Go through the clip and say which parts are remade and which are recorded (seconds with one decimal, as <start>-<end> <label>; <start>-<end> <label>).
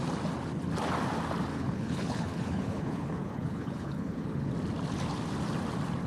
0.0-1.5 recorded; 1.5-4.5 remade; 4.5-6.1 recorded